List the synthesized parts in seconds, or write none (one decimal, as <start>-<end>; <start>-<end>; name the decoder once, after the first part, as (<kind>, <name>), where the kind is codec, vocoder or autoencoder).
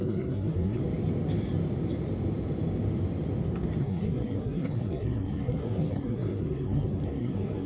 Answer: 0.0-0.8 (codec, SNAC); 3.8-7.7